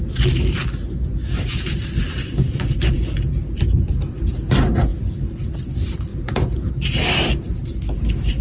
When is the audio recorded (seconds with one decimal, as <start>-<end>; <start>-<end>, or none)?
0.0-6.1; 6.7-8.4

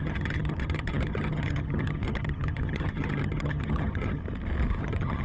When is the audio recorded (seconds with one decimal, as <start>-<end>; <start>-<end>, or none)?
4.2-4.8

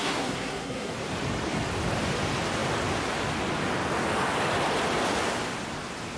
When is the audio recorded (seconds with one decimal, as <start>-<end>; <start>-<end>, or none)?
0.9-6.2

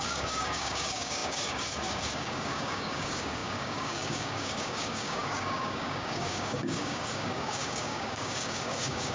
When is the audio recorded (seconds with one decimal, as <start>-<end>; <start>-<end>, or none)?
none